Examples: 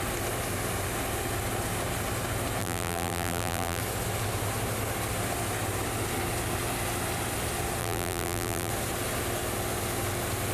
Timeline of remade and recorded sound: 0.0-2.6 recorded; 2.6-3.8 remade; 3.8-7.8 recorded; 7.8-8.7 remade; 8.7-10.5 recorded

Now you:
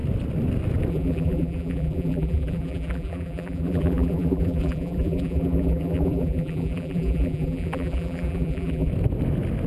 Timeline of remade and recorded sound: 0.0-0.9 recorded; 0.9-8.9 remade; 8.9-9.7 recorded

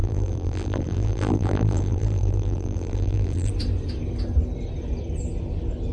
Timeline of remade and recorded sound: 0.0-3.5 remade; 3.5-5.9 recorded

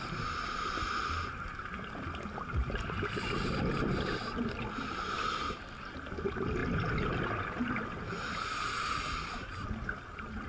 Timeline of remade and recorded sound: 0.0-10.5 recorded

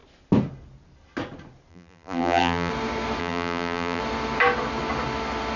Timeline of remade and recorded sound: 0.0-1.7 recorded; 1.7-2.7 remade; 2.7-3.2 recorded; 3.2-4.0 remade; 4.0-5.6 recorded

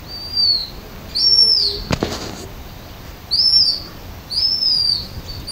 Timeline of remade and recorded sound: 0.0-5.5 recorded